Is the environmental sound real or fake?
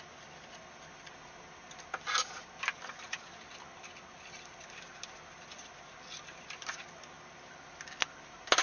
real